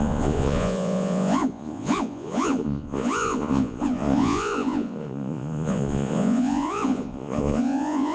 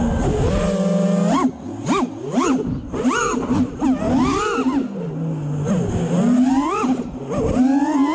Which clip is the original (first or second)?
second